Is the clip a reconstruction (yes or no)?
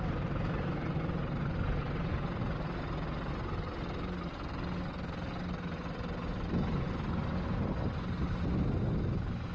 no